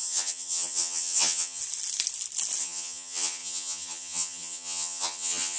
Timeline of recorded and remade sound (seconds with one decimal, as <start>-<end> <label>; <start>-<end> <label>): 0.0-1.6 remade; 1.6-2.6 recorded; 2.6-5.6 remade